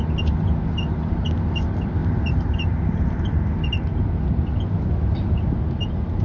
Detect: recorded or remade recorded